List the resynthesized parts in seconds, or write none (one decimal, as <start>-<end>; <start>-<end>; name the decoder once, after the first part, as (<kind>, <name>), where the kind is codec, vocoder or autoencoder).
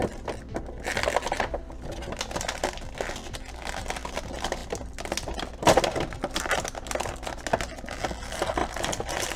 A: 0.0-0.6 (vocoder, BigVGAN v2); 8.6-9.4